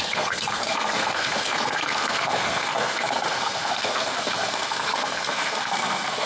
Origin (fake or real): fake